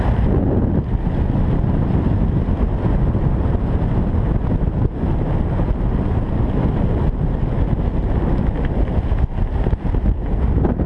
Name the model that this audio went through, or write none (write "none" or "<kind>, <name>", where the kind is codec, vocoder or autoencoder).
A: none